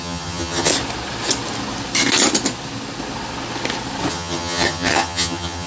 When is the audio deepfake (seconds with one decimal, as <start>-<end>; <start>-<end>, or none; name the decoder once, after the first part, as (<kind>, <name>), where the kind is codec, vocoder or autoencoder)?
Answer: 0.0-0.7 (vocoder, HiFi-GAN); 4.1-5.7